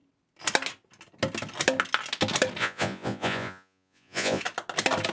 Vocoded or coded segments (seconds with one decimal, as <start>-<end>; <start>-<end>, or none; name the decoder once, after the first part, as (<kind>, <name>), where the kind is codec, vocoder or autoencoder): 2.6-4.4 (vocoder, Vocos)